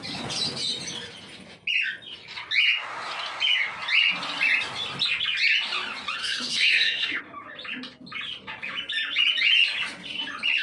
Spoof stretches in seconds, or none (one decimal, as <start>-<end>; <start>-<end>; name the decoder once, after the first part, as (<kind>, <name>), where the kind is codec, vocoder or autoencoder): 6.2-7.2 (codec, SNAC)